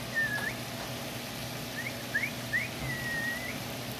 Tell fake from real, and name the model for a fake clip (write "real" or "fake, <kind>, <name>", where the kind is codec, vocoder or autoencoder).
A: real